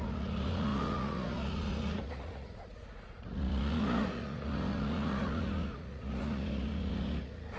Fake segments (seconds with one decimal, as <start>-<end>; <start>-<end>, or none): 0.0-7.6